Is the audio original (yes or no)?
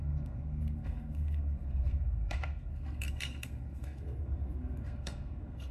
no